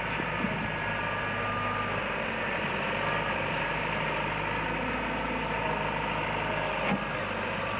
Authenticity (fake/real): real